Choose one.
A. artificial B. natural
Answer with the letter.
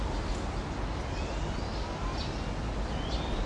B